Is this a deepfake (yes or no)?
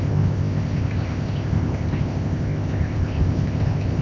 yes